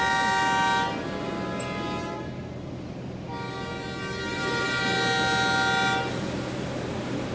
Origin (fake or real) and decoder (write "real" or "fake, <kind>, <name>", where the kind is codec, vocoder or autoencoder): real